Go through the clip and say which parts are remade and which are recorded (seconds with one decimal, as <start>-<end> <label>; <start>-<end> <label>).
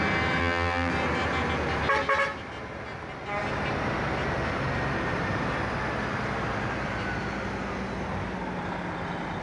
0.0-0.4 recorded; 0.4-0.9 remade; 0.9-9.4 recorded